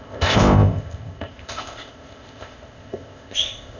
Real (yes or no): no